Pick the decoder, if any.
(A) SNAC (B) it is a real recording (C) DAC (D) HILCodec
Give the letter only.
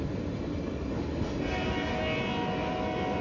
B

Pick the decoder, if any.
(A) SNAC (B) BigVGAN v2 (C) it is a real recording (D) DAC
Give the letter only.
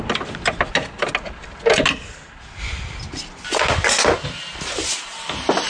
C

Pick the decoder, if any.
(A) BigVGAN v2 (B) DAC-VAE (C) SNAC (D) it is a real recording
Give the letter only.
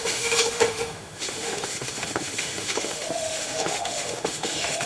B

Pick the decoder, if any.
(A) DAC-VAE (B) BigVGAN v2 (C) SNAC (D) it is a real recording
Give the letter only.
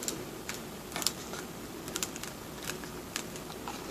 D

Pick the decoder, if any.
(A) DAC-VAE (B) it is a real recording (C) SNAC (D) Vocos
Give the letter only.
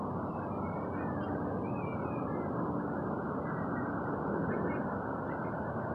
B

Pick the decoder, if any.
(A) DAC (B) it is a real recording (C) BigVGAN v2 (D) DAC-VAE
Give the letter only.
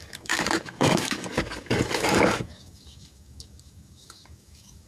A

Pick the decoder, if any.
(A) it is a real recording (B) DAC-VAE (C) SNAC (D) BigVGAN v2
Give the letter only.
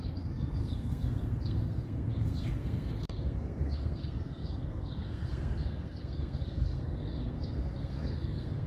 C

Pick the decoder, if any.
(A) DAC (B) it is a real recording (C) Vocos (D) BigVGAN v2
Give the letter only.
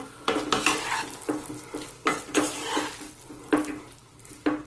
B